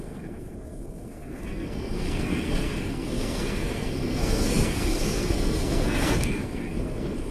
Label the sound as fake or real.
fake